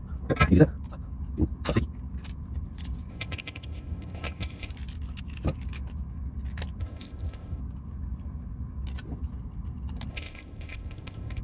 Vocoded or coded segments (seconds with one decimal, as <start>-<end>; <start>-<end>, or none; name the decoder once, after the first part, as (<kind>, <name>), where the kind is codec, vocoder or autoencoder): 3.1-4.7 (codec, ZipCodec); 6.8-7.6; 10.1-11.4